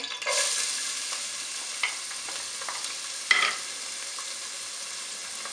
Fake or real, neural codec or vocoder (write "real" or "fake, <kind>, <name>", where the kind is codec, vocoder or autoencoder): real